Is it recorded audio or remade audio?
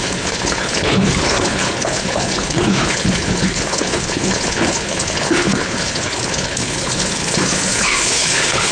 remade